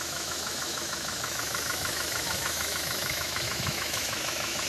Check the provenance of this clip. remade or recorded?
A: remade